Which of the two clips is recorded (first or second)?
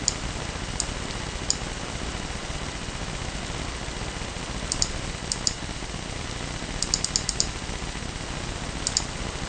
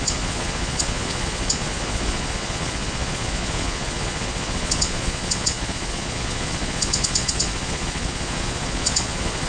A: first